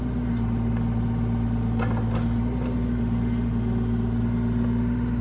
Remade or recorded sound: recorded